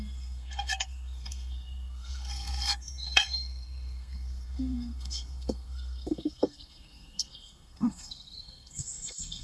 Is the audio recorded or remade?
remade